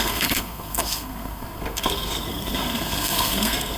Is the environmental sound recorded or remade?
remade